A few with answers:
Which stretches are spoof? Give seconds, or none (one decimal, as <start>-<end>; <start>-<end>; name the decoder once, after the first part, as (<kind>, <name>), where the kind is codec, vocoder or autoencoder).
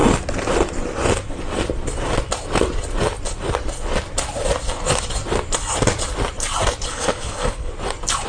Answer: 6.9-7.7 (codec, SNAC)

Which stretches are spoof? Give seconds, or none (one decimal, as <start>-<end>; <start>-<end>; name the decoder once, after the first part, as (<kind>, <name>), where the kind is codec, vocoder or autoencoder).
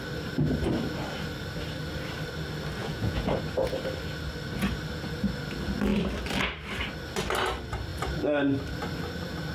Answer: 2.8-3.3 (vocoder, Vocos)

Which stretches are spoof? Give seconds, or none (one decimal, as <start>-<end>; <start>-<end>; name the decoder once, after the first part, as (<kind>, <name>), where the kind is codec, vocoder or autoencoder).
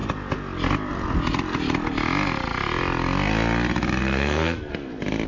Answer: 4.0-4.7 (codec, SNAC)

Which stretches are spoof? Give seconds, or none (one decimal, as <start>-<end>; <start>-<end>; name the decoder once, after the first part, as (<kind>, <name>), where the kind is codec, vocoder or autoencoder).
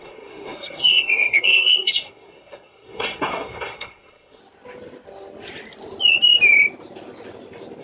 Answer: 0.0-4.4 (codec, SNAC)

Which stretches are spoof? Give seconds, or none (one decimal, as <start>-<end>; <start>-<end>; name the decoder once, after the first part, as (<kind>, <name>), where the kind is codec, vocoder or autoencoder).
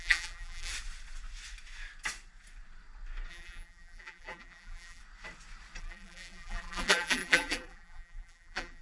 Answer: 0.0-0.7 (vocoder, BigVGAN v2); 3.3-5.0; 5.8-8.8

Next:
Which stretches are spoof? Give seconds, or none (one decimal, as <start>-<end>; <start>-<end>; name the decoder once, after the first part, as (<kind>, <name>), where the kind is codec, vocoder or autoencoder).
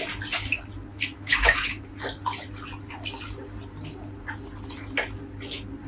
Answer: 0.9-1.8 (autoencoder, DAC-VAE)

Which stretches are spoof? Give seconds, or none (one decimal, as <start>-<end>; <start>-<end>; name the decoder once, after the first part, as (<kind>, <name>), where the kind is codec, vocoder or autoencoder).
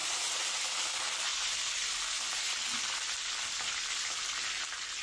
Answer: 0.0-0.6 (vocoder, Vocos)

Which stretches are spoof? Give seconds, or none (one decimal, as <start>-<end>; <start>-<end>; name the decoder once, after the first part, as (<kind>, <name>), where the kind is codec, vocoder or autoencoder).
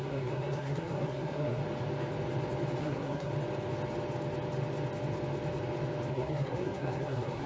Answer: 0.0-1.6 (codec, SNAC); 2.8-3.3; 6.1-7.5